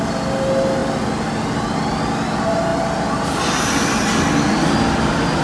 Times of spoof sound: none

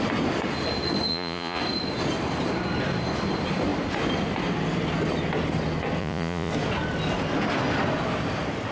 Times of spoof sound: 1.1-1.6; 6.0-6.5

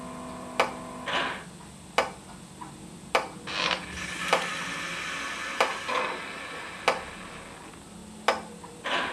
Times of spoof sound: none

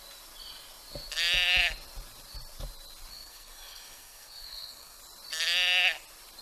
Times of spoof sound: 3.1-5.0

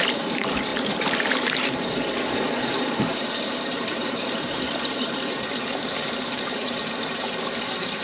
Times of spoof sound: 0.0-8.0

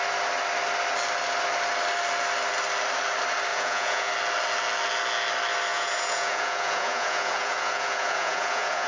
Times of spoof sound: 3.5-4.1; 5.7-8.9

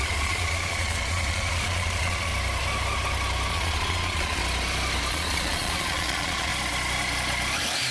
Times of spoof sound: 0.0-2.3; 3.5-4.4; 5.1-6.5